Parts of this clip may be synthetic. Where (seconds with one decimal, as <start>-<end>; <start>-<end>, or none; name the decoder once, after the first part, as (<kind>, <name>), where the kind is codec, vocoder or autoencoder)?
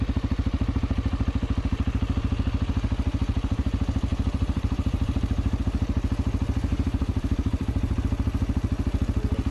4.1-5.6 (vocoder, BigVGAN v2); 6.7-8.0